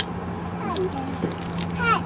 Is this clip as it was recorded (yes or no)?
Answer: yes